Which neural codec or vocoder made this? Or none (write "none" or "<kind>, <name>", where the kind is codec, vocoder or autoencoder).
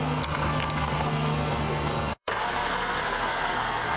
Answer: codec, SNAC